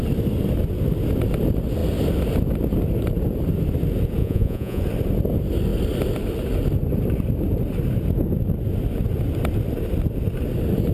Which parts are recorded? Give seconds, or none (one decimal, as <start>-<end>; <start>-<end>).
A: 0.0-4.2; 4.8-10.9